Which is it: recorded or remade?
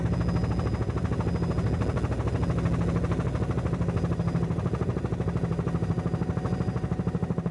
recorded